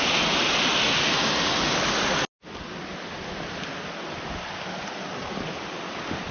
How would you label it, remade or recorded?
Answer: recorded